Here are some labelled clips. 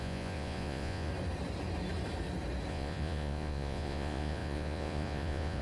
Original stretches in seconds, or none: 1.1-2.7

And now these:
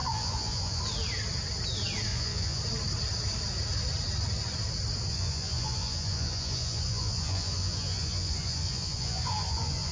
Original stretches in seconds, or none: 0.8-2.1; 2.6-5.1

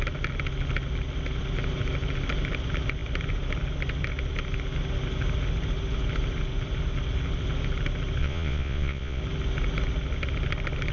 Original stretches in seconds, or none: 0.0-8.2; 9.2-10.9

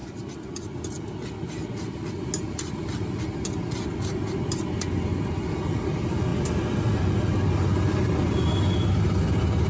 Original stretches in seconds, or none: 0.0-9.7

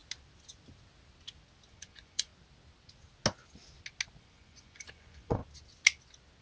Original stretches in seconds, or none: 0.0-1.7; 2.3-4.2; 5.4-6.4

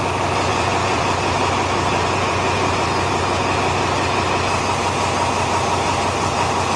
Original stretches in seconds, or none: 0.0-0.5; 1.0-2.0; 3.0-6.8

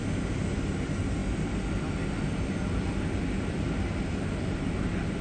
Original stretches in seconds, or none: 0.0-5.2

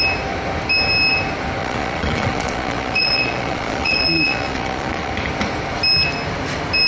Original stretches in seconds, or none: 0.0-1.6; 5.1-6.9